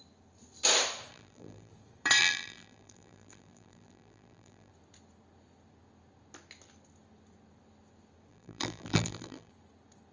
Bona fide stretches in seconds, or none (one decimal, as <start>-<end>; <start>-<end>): 0.0-1.1; 1.7-2.2; 4.7-8.3; 9.5-10.1